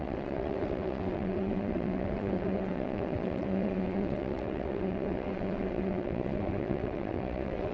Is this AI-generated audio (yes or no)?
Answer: yes